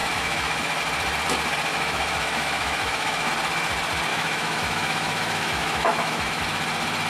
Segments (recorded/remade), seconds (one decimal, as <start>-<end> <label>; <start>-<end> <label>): 0.0-0.8 remade; 0.8-1.7 recorded; 1.7-3.3 remade; 3.3-4.1 recorded; 4.1-6.4 remade; 6.4-7.1 recorded